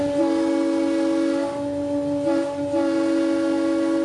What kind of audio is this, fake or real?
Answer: real